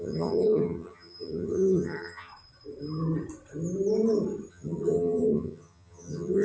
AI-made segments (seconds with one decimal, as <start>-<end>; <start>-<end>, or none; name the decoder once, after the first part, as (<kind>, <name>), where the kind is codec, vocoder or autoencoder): 0.0-2.3 (vocoder, HiFi-GAN); 4.5-6.4